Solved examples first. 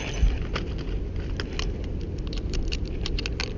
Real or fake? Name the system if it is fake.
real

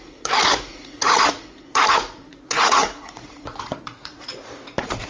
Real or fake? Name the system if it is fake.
fake, vocoder, Vocos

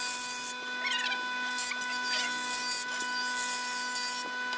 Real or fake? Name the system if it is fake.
real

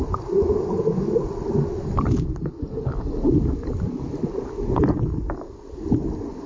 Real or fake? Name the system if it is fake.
real